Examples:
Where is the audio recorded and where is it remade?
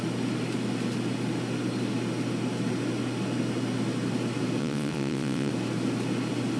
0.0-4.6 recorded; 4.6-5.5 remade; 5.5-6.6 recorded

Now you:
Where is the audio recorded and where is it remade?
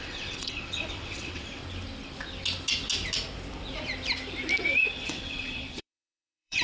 0.0-1.6 remade; 1.6-5.0 recorded; 5.0-6.6 remade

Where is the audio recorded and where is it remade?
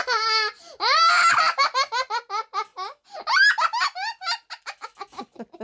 0.0-5.6 recorded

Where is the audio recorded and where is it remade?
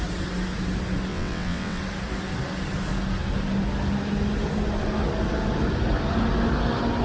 0.0-1.1 recorded; 1.1-1.8 remade; 1.8-7.0 recorded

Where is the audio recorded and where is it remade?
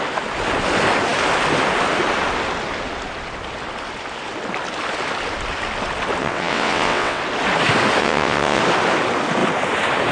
0.0-6.2 recorded; 6.2-7.2 remade; 7.2-8.0 recorded; 8.0-8.6 remade; 8.6-10.1 recorded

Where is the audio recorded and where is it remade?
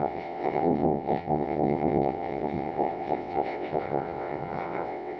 0.0-5.2 remade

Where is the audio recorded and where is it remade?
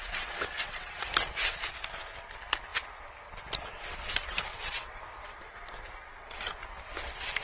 0.0-1.1 remade; 1.1-4.5 recorded; 4.5-5.4 remade; 5.4-7.4 recorded